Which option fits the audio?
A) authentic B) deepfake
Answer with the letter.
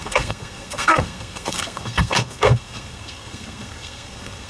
B